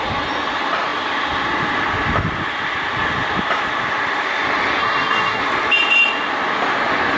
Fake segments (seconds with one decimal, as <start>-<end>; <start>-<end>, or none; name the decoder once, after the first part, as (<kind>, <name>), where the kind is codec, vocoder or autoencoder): 4.8-5.4 (codec, SNAC)